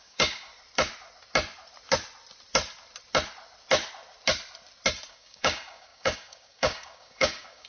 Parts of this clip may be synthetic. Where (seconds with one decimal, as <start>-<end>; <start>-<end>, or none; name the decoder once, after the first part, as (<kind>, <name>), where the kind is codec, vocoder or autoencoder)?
0.0-0.5 (codec, DAC); 5.1-7.7